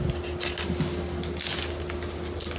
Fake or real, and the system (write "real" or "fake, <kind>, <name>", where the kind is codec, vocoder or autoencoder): real